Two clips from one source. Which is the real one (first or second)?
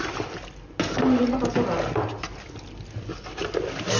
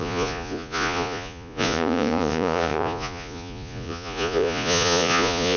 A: first